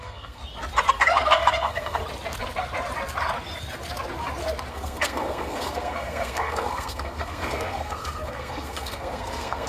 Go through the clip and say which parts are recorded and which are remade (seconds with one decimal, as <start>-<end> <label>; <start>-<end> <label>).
0.0-0.4 remade; 0.4-0.9 recorded; 0.9-2.0 remade; 2.0-4.7 recorded; 4.7-9.7 remade